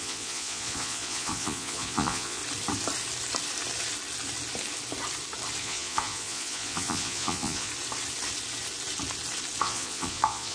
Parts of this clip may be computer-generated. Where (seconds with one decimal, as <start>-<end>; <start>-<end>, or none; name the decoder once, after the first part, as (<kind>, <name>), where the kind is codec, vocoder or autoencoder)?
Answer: 0.0-2.4 (vocoder, Vocos); 5.6-7.7; 9.6-10.5